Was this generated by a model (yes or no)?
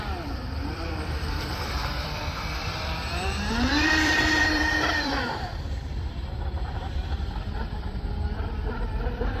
yes